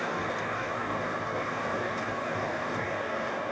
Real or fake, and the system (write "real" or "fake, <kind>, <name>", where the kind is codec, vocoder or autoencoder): fake, codec, DAC